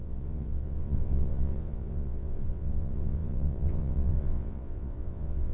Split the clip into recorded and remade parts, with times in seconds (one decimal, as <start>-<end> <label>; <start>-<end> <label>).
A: 0.0-5.5 remade